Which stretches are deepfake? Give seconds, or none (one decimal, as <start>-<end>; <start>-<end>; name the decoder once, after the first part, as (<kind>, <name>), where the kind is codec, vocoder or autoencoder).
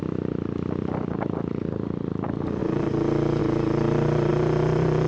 4.3-5.1 (vocoder, BigVGAN v2)